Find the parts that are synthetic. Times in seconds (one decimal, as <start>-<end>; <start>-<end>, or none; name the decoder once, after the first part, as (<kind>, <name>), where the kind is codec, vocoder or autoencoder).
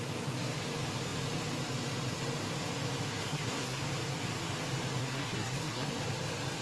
3.2-3.8 (codec, SNAC); 5.0-5.9